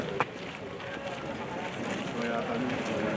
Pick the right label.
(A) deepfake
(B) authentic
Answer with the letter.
B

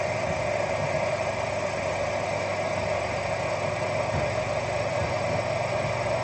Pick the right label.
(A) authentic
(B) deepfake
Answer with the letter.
A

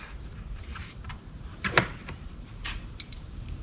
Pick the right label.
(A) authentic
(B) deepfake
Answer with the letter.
B